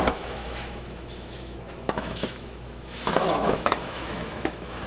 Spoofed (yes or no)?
yes